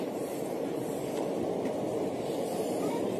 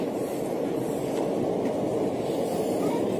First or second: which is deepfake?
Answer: first